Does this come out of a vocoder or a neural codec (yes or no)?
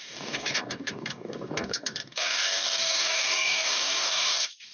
yes